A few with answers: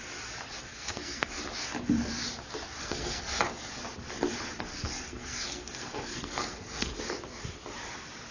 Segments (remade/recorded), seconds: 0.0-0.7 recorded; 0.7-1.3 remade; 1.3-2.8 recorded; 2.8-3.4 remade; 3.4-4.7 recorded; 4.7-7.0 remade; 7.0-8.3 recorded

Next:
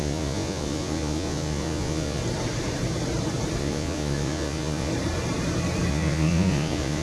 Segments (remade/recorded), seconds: 0.0-2.2 remade; 2.2-3.6 recorded; 3.6-4.9 remade; 4.9-5.9 recorded; 5.9-7.0 remade

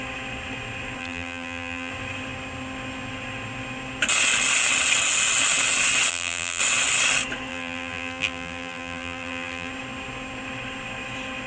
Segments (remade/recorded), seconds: 0.0-1.0 recorded; 1.0-1.9 remade; 1.9-6.1 recorded; 6.1-6.6 remade; 6.6-7.5 recorded; 7.5-9.7 remade; 9.7-11.5 recorded

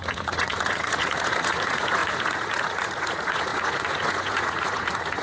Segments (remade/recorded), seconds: 0.0-5.2 remade

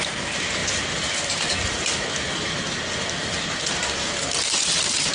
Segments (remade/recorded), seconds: 0.0-5.1 recorded

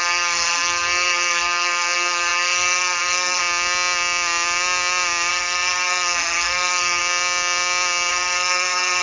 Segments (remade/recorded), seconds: 0.0-3.4 remade; 3.4-5.3 recorded; 5.3-7.0 remade; 7.0-8.1 recorded; 8.1-9.0 remade

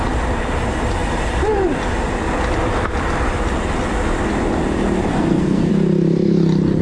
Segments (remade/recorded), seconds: 0.0-5.1 recorded; 5.1-5.7 remade; 5.7-6.8 recorded

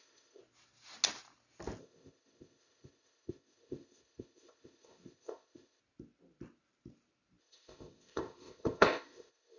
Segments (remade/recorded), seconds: 0.0-0.4 remade; 0.4-1.8 recorded; 1.8-5.8 remade; 5.8-7.4 recorded; 7.4-9.6 remade